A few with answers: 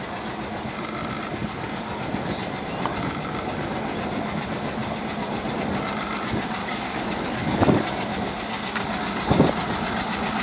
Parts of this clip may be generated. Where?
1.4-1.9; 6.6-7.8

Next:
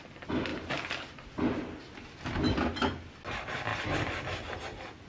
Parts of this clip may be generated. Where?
none

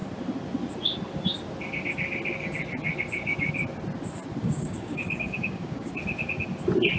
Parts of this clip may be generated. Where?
4.4-5.9

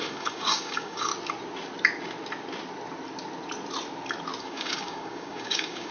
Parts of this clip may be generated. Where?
0.0-1.1; 4.4-5.9

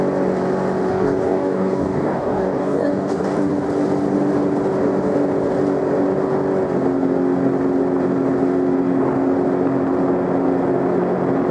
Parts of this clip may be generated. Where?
0.9-3.5

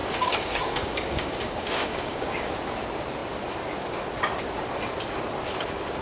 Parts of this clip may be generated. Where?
0.0-2.5